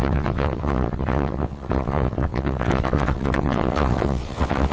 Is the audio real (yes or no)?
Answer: no